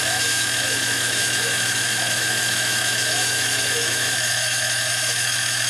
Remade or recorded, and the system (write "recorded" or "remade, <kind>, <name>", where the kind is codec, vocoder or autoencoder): remade, autoencoder, DAC-VAE